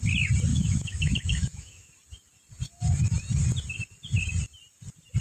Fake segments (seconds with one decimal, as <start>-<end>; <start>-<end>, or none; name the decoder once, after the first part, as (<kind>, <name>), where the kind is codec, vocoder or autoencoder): 0.5-1.9 (autoencoder, DAC-VAE)